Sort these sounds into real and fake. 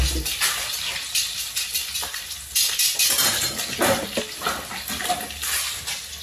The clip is real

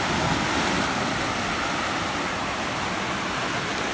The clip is real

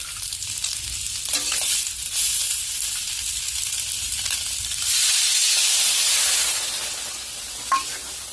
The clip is real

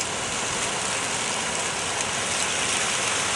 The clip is real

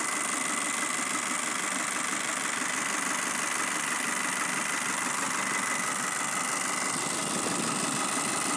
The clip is real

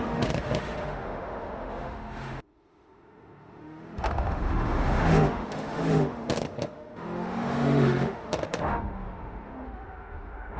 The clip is fake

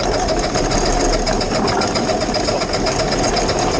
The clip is real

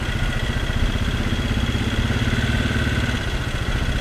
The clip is real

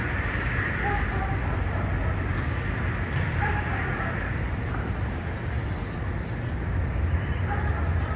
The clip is real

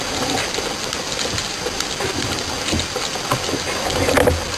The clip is real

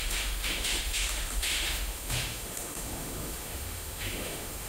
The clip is fake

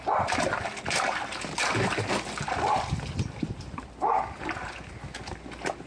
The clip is real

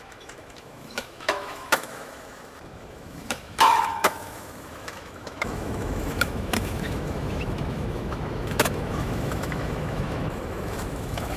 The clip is fake